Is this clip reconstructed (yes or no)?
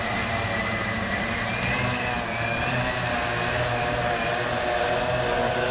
no